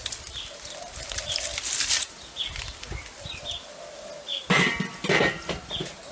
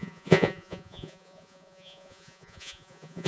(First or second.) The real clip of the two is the first